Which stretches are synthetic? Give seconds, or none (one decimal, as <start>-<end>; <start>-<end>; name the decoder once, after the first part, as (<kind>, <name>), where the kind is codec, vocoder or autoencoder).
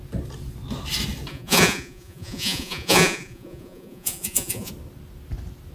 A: 1.3-4.7 (vocoder, Vocos)